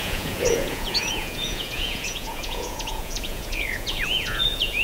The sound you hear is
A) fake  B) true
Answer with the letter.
A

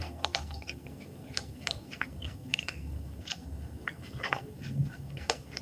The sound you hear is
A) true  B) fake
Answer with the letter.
B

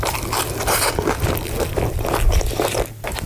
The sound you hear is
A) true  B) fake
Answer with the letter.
B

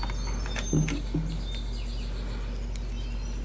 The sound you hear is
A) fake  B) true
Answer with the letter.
B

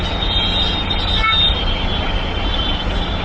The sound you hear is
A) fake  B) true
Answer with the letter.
B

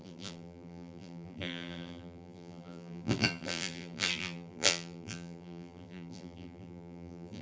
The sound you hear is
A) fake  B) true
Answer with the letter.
A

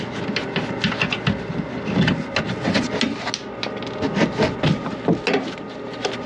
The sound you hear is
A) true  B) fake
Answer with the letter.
A